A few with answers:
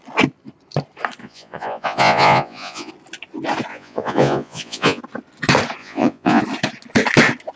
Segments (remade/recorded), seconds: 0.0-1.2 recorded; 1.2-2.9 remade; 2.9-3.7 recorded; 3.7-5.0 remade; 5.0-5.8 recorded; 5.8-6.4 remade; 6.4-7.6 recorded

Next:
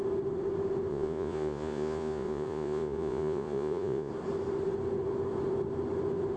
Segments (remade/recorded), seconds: 0.0-0.9 recorded; 0.9-4.1 remade; 4.1-6.4 recorded

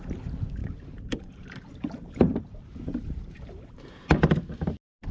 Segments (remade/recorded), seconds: 0.0-0.6 recorded; 0.6-3.7 remade; 3.7-5.1 recorded

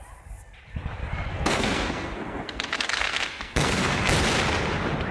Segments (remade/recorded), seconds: 0.0-1.0 recorded; 1.0-4.1 remade; 4.1-5.1 recorded